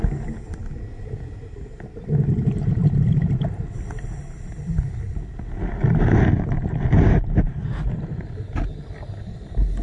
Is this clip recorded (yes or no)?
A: yes